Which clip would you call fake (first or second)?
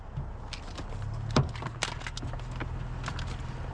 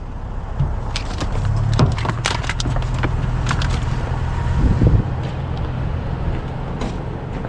second